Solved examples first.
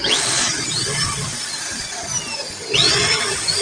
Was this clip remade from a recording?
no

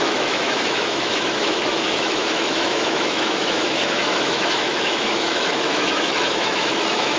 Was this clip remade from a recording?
yes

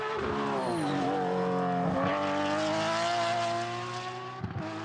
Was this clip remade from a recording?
no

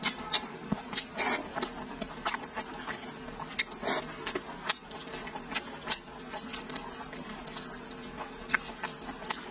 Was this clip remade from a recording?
no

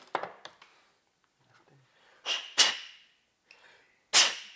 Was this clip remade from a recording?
no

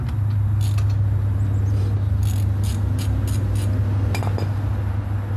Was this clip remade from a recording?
no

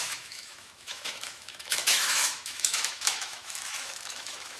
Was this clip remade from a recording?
yes